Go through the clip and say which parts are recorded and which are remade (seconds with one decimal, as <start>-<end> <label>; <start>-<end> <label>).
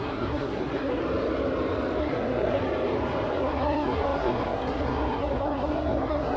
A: 0.0-1.0 remade; 1.0-2.0 recorded; 2.0-2.6 remade; 2.6-3.3 recorded; 3.3-6.4 remade